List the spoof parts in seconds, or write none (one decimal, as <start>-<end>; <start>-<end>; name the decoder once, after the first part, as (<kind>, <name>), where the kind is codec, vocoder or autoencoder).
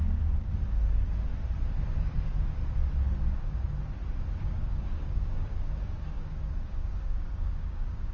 0.0-1.3 (codec, DAC); 2.2-2.6; 4.4-8.1